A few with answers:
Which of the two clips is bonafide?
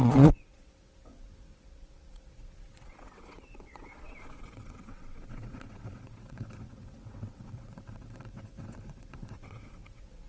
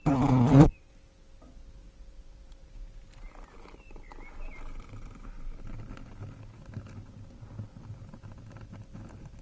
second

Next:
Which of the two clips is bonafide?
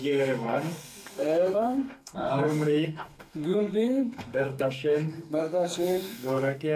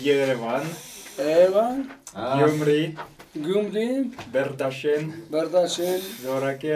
second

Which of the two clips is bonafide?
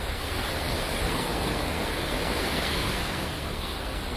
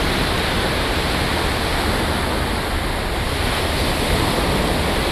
second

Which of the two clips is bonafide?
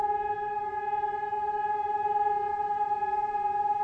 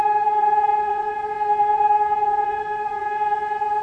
first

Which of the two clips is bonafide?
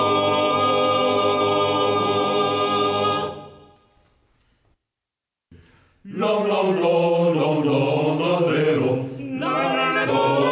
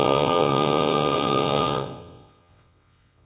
first